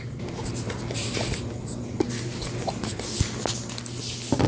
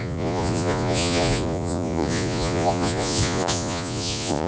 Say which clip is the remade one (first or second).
second